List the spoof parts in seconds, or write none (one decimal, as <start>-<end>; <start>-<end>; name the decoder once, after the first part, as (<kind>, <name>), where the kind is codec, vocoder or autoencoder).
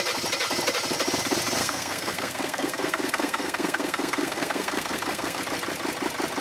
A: 1.6-5.4 (codec, SNAC)